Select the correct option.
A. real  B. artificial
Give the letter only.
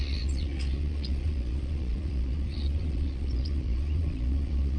B